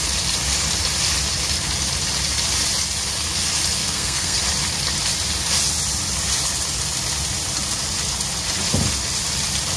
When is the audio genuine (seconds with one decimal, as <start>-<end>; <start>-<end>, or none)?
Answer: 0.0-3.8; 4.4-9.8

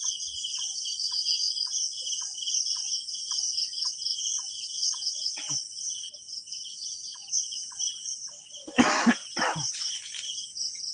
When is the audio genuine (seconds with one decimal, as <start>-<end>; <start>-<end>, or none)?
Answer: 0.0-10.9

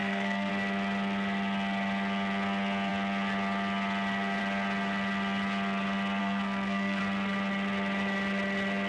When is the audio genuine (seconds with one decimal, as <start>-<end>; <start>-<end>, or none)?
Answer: 0.5-6.2; 7.0-8.9

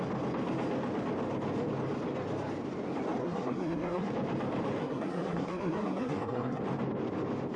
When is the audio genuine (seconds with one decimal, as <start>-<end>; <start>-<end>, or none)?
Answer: 0.0-3.2; 4.1-4.8; 6.6-7.6

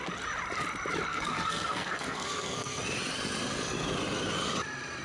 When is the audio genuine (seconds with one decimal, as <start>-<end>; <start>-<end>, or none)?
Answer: 0.0-1.1; 2.8-5.0